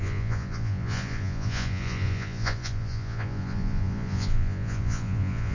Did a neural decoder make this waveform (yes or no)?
yes